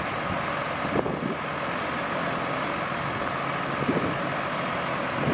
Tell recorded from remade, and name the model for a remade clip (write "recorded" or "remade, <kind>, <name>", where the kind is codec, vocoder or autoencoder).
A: recorded